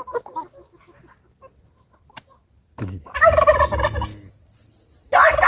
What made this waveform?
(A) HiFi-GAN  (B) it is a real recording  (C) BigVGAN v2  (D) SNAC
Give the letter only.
B